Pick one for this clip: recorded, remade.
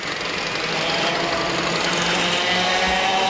recorded